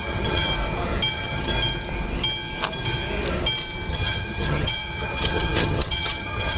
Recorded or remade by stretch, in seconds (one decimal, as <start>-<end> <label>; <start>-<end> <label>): 0.0-0.5 remade; 0.5-1.1 recorded; 1.1-1.5 remade; 1.5-3.9 recorded; 3.9-6.6 remade